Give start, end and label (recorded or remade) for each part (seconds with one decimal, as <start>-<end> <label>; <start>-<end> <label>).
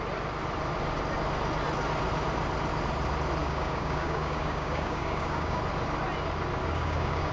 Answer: 0.0-3.4 recorded; 3.4-5.6 remade; 5.6-6.6 recorded; 6.6-7.3 remade